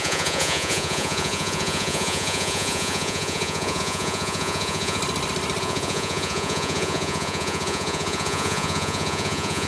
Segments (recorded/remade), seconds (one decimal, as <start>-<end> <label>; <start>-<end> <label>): 0.0-5.0 remade; 5.0-5.6 recorded; 5.6-9.7 remade